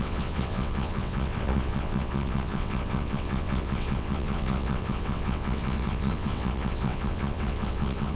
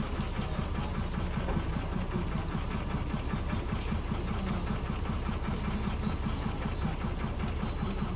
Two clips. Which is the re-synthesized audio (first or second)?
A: first